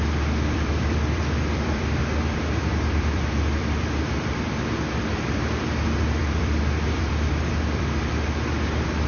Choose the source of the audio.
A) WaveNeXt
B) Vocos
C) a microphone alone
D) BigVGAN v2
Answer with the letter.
D